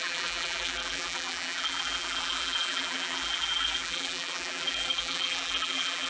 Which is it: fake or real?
fake